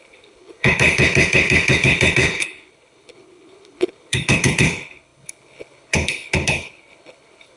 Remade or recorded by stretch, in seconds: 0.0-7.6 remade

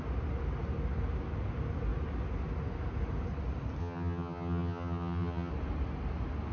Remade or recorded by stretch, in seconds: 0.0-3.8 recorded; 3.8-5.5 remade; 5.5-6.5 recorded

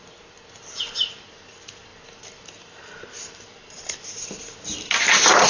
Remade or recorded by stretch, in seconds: 0.0-5.5 recorded

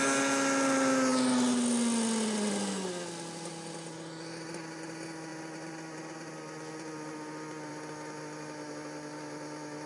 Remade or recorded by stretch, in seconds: 0.0-9.9 recorded

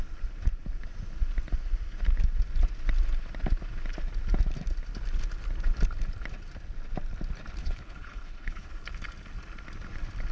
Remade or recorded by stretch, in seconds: 0.0-7.6 recorded; 7.6-8.7 remade; 8.7-10.3 recorded

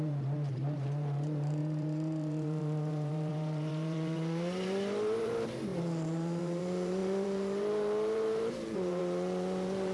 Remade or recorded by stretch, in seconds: 0.0-9.9 remade

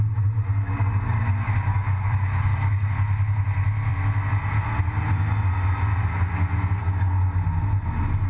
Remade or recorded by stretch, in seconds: 0.0-1.7 recorded; 1.7-2.9 remade; 2.9-8.3 recorded

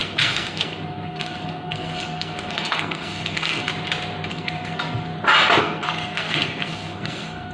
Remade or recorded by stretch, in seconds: 0.0-3.7 remade; 3.7-4.3 recorded; 4.3-5.1 remade; 5.1-5.6 recorded; 5.6-7.5 remade